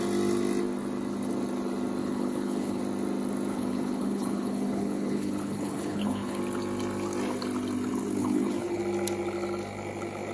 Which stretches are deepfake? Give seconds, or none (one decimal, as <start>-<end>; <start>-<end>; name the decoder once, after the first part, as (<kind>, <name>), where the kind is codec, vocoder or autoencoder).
2.0-2.8 (codec, HILCodec); 3.5-6.4; 8.2-8.8